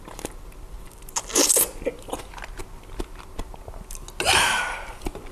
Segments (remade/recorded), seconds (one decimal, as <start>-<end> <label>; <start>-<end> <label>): 0.0-5.3 recorded